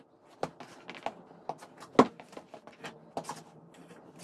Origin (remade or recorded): recorded